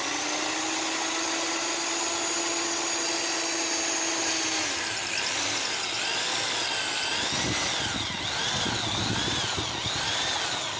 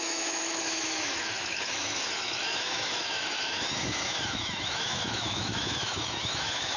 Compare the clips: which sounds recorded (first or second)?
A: first